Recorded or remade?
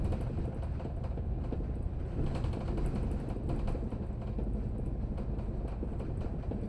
recorded